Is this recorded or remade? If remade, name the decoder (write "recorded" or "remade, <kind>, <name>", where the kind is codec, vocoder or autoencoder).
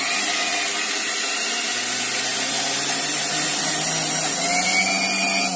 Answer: recorded